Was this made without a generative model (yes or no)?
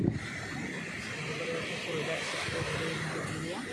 yes